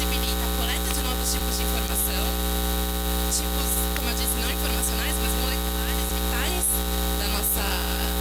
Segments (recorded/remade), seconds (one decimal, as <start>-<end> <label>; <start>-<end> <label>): 0.0-8.2 recorded